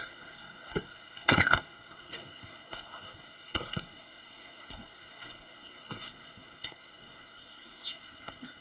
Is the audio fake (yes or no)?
yes